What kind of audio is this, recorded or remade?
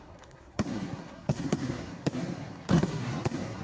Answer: remade